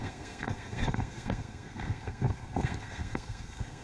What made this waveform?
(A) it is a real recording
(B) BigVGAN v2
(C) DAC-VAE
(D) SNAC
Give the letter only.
D